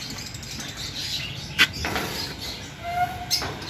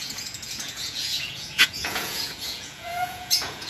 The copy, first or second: second